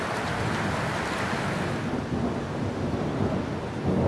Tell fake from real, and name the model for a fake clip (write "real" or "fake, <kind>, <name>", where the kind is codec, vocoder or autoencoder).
real